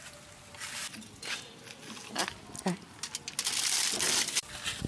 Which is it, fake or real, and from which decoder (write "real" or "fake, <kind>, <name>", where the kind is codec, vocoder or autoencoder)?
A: real